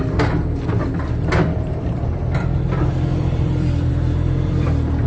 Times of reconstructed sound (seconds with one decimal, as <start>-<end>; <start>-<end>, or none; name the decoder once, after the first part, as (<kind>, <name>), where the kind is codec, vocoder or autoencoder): 0.8-3.9 (vocoder, BigVGAN v2)